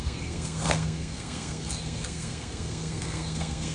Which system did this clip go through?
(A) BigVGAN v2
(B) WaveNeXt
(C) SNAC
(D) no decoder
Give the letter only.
C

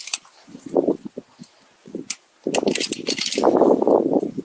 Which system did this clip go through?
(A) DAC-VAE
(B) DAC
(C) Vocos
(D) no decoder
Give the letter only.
D